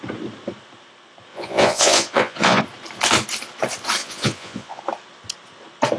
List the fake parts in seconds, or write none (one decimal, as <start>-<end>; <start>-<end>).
1.3-2.6; 4.0-4.8